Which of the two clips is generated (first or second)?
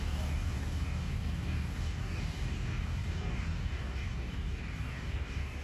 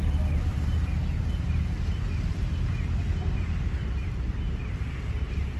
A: first